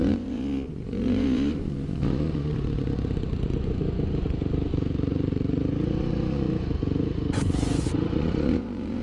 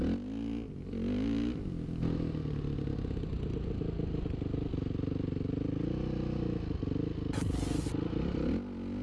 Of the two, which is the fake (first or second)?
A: first